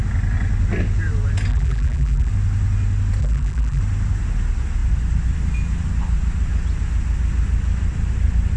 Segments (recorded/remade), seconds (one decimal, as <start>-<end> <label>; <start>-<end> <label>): 0.0-1.5 recorded; 1.5-2.3 remade; 2.3-3.2 recorded; 3.2-3.8 remade; 3.8-8.6 recorded